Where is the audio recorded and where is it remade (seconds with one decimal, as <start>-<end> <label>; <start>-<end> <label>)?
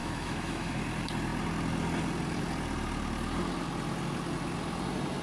0.0-0.8 remade; 0.8-5.2 recorded